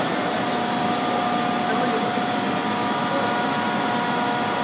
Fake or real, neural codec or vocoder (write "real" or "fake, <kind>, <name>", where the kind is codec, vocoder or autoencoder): real